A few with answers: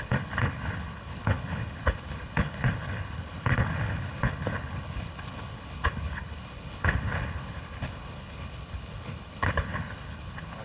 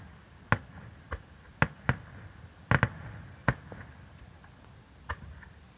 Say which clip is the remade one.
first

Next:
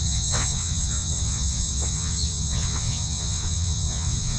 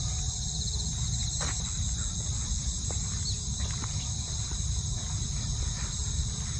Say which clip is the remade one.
first